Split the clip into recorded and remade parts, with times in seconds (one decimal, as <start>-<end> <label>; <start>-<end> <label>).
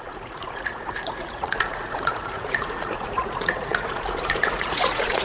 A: 0.0-5.2 remade